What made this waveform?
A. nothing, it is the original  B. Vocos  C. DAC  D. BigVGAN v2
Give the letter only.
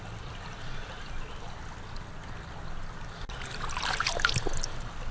A